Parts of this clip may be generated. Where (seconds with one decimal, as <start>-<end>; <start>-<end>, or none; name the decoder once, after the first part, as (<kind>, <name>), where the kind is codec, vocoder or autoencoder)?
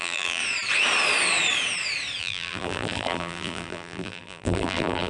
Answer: 0.0-0.4 (vocoder, BigVGAN v2); 2.2-5.1